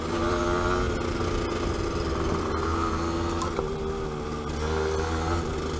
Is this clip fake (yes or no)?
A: no